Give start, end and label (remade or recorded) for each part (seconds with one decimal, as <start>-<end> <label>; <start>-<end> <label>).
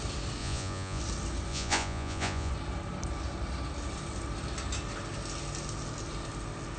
0.0-0.4 recorded; 0.4-1.0 remade; 1.0-1.5 recorded; 1.5-2.5 remade; 2.5-6.8 recorded